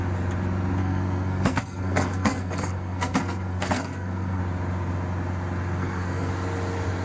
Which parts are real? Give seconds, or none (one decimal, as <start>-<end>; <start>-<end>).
0.0-0.8; 4.4-5.8; 6.3-7.0